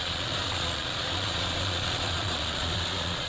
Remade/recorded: remade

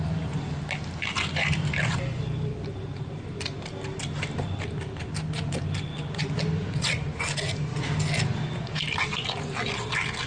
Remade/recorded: recorded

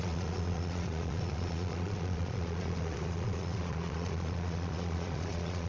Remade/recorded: remade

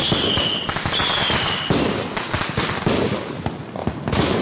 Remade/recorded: recorded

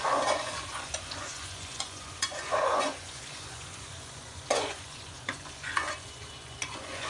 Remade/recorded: remade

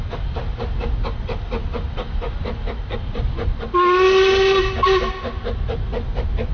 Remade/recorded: recorded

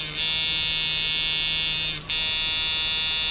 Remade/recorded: recorded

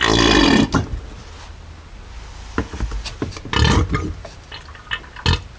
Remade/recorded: recorded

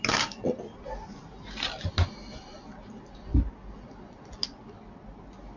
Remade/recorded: recorded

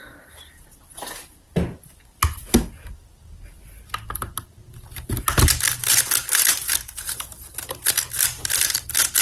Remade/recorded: recorded